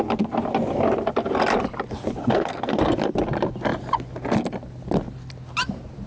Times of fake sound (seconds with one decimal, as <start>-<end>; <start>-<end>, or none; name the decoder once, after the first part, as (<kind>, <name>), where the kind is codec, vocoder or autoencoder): 2.2-2.8 (codec, SNAC)